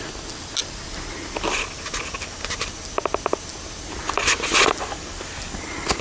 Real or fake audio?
real